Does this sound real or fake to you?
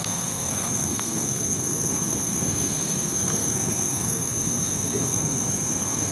fake